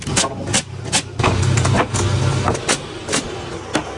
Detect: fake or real real